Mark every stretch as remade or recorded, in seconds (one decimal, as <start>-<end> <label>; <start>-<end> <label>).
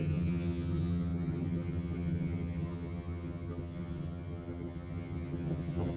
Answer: 0.0-6.0 remade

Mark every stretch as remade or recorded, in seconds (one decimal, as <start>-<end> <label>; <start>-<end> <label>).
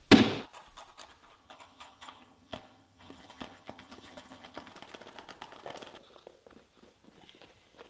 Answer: 0.0-1.4 recorded; 1.4-4.7 remade; 4.7-7.9 recorded